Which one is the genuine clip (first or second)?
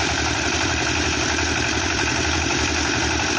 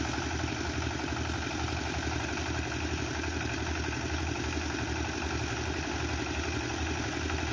second